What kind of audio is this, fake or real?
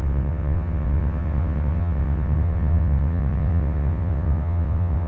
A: fake